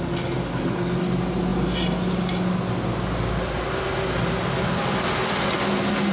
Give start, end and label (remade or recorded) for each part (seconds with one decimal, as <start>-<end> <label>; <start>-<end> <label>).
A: 0.0-6.1 recorded